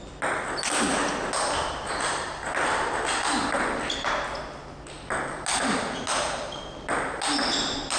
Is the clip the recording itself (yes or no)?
yes